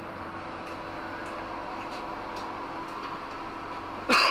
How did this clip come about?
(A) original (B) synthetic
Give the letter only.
A